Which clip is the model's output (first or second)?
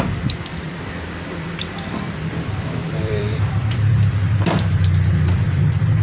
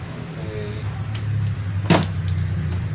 first